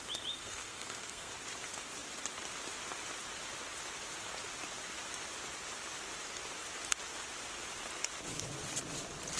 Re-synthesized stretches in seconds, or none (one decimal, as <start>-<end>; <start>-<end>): 0.4-1.3